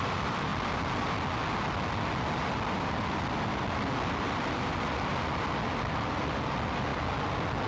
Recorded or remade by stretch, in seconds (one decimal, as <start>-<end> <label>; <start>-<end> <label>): 0.0-0.5 remade; 0.5-2.4 recorded; 2.4-5.1 remade; 5.1-5.9 recorded; 5.9-6.9 remade; 6.9-7.7 recorded